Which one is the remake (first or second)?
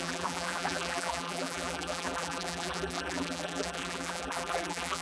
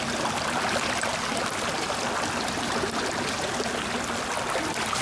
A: first